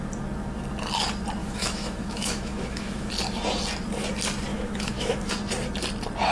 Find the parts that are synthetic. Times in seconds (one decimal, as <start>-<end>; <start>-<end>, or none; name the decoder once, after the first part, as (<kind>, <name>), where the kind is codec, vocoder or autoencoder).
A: 1.4-3.1 (autoencoder, DAC-VAE); 4.5-5.3